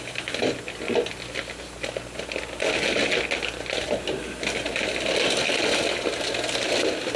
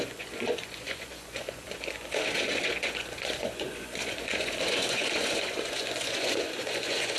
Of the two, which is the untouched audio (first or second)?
first